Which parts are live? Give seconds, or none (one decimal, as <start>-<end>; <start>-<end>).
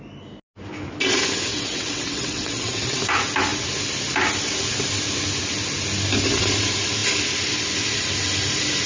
0.0-1.5; 3.0-8.9